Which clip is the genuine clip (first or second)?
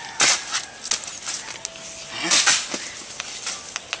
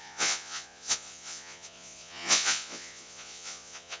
first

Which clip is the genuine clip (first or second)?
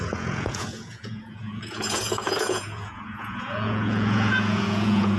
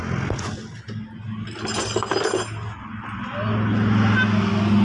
second